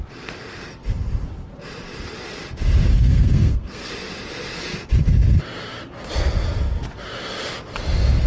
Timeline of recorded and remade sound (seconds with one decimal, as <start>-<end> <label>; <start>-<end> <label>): 0.0-2.9 recorded; 2.9-3.9 remade; 3.9-8.3 recorded